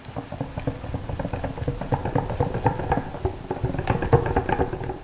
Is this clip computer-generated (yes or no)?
no